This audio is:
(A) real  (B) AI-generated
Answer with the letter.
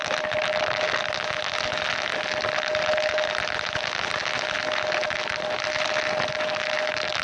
A